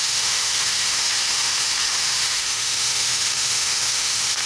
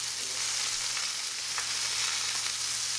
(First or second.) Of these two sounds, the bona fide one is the second